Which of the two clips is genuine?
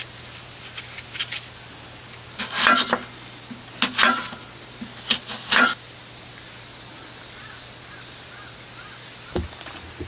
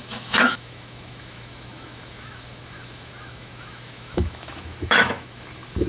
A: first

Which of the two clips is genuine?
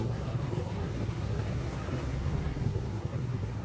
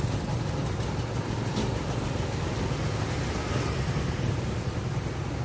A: second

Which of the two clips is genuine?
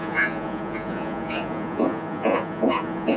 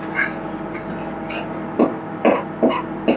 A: second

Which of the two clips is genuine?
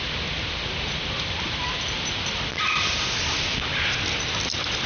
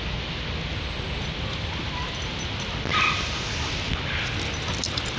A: second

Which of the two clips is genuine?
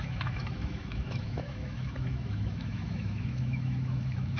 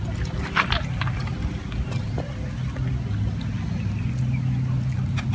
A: second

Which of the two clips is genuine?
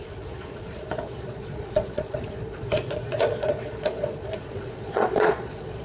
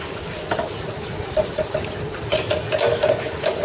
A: second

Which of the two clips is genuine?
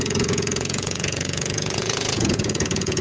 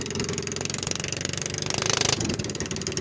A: second